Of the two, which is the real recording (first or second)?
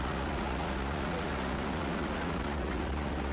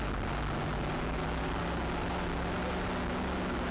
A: second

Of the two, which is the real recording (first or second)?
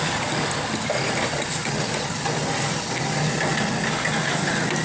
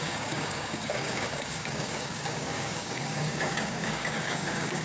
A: first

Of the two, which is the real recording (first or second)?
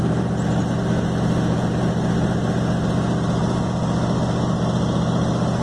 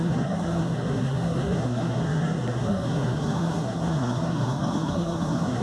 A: first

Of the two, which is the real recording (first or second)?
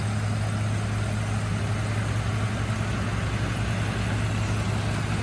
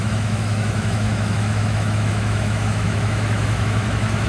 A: first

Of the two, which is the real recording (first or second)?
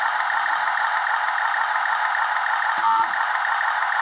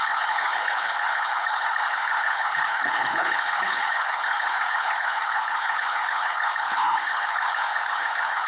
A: first